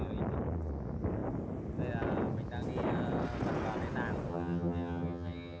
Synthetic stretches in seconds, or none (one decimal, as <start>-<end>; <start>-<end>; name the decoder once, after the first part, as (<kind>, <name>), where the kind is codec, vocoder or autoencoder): 4.3-5.6 (vocoder, HiFi-GAN)